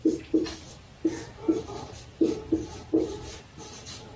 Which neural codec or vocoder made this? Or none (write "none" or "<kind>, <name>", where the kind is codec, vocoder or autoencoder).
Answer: vocoder, BigVGAN v2